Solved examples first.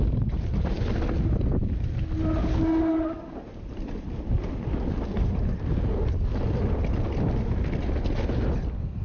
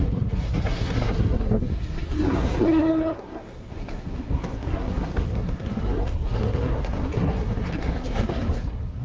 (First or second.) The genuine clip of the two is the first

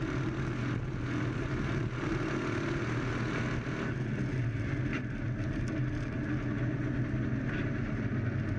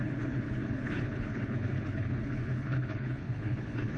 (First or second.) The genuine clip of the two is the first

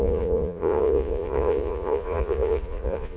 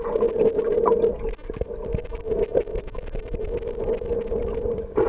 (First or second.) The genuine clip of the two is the second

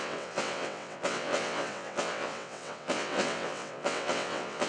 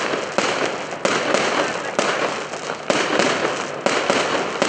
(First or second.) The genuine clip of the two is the second